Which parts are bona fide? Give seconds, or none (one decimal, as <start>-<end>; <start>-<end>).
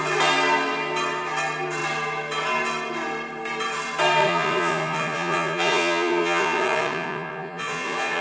0.0-4.2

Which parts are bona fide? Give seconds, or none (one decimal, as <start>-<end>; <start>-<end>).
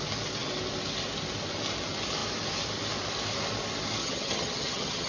0.0-4.0